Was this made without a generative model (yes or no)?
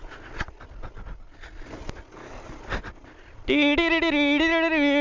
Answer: yes